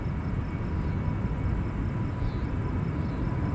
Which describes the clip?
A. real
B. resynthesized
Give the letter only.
A